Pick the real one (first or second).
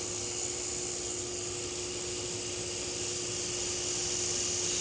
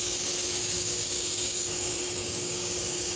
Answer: first